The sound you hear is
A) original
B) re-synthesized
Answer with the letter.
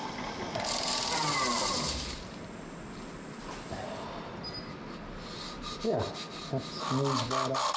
A